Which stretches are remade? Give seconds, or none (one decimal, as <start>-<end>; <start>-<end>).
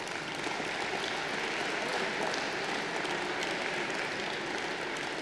none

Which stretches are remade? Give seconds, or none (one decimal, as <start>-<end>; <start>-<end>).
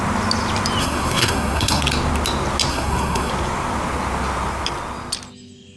0.8-1.8; 2.7-3.3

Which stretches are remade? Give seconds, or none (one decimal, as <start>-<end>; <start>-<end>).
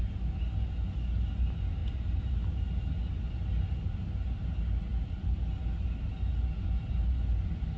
none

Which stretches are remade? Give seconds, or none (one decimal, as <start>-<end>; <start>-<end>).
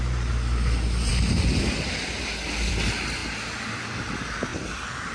none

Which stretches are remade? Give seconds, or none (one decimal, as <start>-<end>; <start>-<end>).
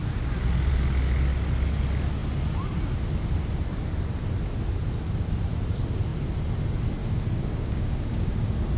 7.0-8.8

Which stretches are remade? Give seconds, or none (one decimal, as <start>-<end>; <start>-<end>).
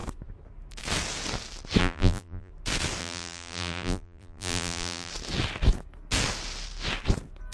1.8-2.5; 3.0-5.1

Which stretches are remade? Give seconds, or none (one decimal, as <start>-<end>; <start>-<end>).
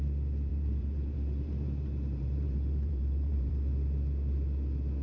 0.5-3.5